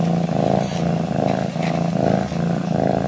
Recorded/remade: recorded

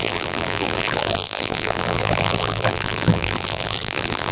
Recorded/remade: remade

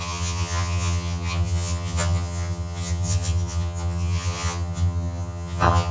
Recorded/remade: remade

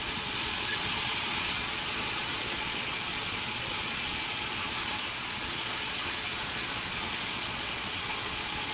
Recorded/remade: remade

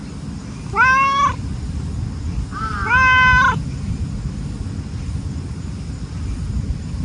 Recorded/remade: recorded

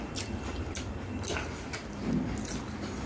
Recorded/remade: recorded